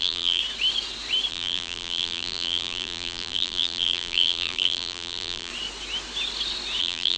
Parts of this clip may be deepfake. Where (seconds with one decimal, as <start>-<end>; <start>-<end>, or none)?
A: 0.0-0.4; 1.3-5.5; 6.8-7.2